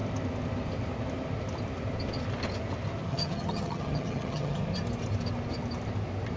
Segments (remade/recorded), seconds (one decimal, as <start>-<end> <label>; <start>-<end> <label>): 0.0-3.1 recorded; 3.1-4.6 remade; 4.6-6.4 recorded